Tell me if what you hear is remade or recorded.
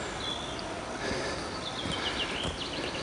recorded